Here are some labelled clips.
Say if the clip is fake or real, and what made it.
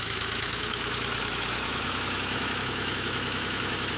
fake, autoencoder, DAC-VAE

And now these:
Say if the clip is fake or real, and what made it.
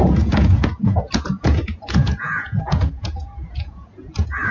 fake, vocoder, Vocos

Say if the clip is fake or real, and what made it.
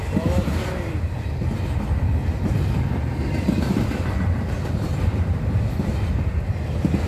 fake, vocoder, BigVGAN v2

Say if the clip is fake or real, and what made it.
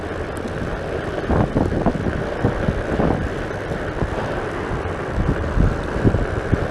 real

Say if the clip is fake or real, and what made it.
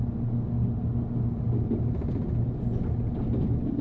real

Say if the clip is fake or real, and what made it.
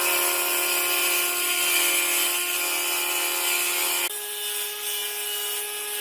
real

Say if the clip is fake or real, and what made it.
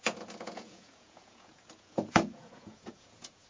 fake, vocoder, Vocos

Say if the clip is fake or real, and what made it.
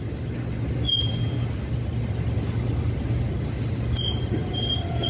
real